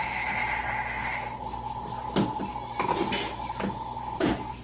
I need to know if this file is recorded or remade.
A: recorded